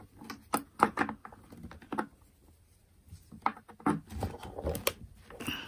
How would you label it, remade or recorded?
recorded